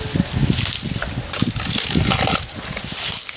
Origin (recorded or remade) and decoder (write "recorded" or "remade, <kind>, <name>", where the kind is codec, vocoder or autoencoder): recorded